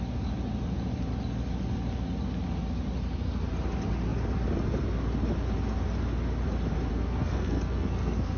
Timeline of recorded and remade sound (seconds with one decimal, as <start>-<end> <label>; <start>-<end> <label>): 0.0-6.9 recorded; 6.9-8.4 remade